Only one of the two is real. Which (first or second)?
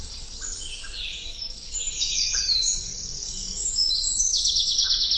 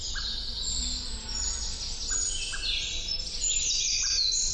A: second